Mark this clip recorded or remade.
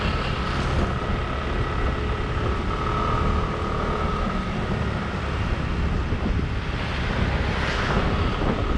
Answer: recorded